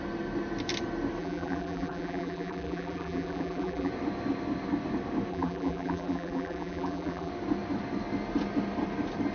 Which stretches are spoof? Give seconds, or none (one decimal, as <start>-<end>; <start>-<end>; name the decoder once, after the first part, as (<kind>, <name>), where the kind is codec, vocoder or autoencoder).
1.2-3.9 (vocoder, BigVGAN v2); 5.3-7.3